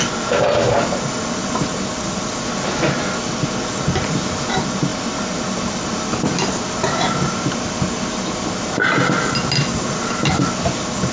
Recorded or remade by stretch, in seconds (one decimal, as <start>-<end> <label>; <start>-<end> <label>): 0.0-1.4 recorded; 1.4-2.5 remade; 2.5-4.9 recorded; 4.9-9.8 remade; 9.8-11.1 recorded